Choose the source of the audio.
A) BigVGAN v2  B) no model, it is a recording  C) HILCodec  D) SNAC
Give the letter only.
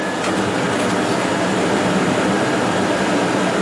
B